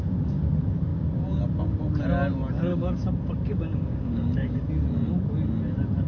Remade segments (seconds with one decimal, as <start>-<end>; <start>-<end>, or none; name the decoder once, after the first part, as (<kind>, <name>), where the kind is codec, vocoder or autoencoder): 2.7-4.7 (codec, DAC)